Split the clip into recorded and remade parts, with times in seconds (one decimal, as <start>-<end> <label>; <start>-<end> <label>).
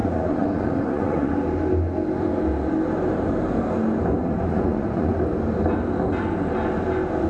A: 0.0-1.3 remade; 1.3-4.2 recorded; 4.2-5.2 remade; 5.2-7.3 recorded